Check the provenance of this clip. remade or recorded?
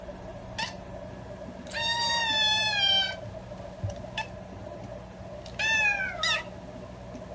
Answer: recorded